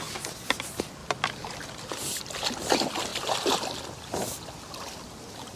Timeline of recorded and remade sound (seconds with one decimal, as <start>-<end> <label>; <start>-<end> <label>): 0.0-5.6 recorded